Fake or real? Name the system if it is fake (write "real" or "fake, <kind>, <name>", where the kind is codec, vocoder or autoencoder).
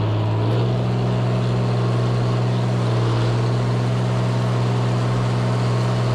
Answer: real